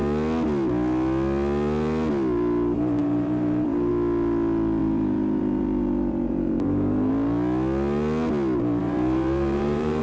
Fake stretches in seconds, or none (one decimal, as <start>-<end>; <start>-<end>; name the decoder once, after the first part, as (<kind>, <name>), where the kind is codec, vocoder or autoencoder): 3.0-3.9 (vocoder, BigVGAN v2); 4.8-7.1; 8.8-10.0